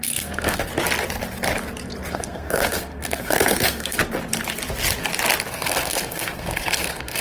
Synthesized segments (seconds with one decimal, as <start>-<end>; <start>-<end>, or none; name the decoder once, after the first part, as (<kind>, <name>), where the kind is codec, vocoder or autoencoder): 0.0-0.7 (codec, SNAC); 2.1-4.0; 5.5-7.2